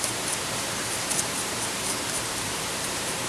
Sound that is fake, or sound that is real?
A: fake